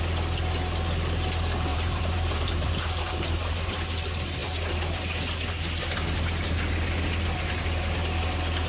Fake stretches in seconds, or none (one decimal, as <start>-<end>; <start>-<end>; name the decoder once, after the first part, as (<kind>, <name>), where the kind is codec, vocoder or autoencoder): 1.7-2.7 (vocoder, BigVGAN v2)

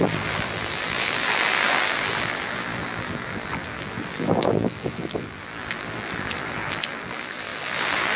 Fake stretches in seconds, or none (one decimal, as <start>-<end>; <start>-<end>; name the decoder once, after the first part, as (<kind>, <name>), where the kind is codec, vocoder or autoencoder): 0.0-8.2 (vocoder, BigVGAN v2)

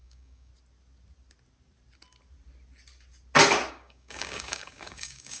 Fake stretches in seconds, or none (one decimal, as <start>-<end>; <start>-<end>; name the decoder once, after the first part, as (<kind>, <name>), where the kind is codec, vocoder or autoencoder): 0.0-0.5 (codec, DAC); 3.7-5.4

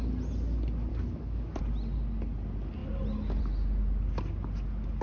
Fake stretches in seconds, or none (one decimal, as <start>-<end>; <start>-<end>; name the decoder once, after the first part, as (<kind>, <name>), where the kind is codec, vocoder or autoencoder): 0.9-1.6 (codec, DAC)

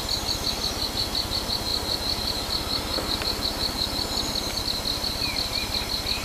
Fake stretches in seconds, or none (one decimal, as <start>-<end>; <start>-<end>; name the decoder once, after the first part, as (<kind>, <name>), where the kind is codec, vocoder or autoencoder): none

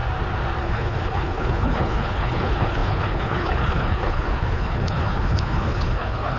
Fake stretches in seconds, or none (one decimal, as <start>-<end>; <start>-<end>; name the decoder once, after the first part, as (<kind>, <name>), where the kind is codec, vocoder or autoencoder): 0.6-6.4 (codec, HILCodec)